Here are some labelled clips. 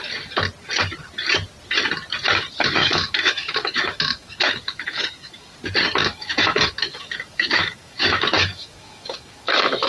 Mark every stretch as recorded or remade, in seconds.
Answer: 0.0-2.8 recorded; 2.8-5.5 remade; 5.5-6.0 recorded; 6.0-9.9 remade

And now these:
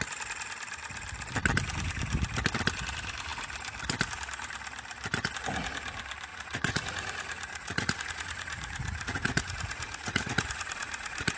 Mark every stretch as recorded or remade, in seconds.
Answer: 0.0-6.3 recorded; 6.3-11.4 remade